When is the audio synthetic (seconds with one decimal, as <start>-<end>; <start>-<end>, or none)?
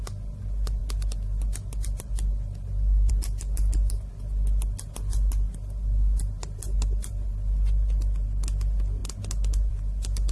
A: none